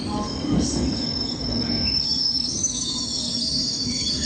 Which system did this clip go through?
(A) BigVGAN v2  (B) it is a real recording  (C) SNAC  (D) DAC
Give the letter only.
D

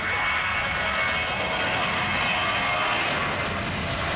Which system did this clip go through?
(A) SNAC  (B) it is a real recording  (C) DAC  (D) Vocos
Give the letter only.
B